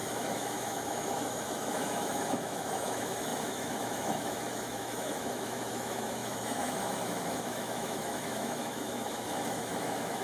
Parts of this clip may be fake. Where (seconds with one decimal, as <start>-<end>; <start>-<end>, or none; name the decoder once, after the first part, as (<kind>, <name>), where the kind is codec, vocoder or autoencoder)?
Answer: 0.0-10.2 (autoencoder, DAC-VAE)